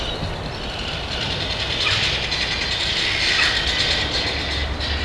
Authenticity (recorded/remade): recorded